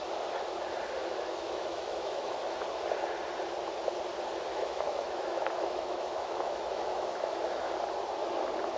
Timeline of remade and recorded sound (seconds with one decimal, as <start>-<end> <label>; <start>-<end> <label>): 0.0-1.0 recorded; 1.0-2.4 remade; 2.4-4.5 recorded; 4.5-7.7 remade; 7.7-8.8 recorded